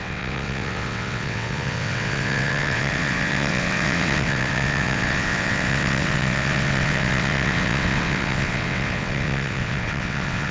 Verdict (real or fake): fake